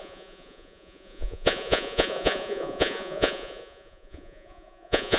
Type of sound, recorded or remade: remade